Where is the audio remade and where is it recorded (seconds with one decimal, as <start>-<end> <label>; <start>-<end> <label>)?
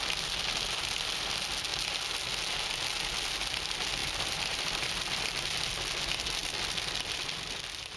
0.0-4.0 recorded; 4.0-5.2 remade; 5.2-8.0 recorded